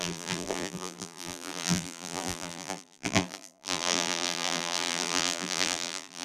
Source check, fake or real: fake